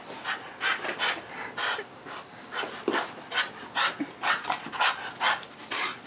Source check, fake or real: real